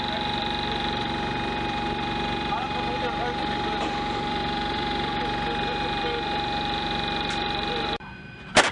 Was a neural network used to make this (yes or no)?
yes